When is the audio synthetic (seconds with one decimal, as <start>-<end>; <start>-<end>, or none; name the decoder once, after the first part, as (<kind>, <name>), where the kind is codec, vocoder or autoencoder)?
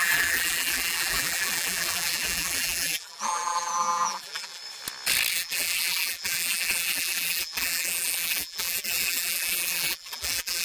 0.0-4.6 (vocoder, BigVGAN v2); 5.3-10.6